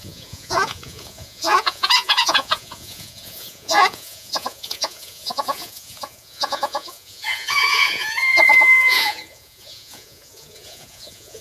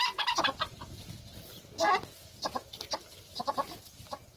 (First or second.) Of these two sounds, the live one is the second